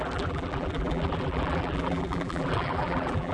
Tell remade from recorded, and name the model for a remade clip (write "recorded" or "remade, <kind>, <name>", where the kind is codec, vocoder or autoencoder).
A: remade, vocoder, BigVGAN v2